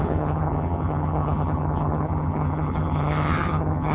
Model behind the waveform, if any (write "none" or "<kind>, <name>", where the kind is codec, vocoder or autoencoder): vocoder, HiFi-GAN